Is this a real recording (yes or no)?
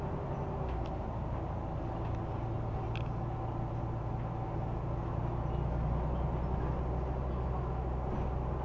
yes